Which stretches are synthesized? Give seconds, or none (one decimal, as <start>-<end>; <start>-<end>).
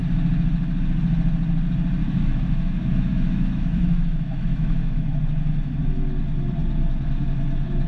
2.0-5.2